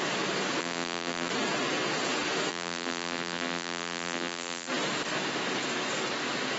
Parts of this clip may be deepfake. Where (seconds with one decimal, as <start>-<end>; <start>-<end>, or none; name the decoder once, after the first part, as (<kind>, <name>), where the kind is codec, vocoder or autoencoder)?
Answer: 0.6-1.3 (vocoder, BigVGAN v2); 2.5-4.7